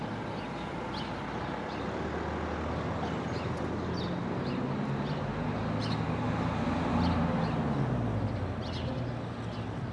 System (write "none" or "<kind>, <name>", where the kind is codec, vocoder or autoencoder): none